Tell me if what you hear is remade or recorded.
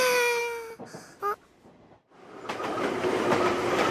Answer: recorded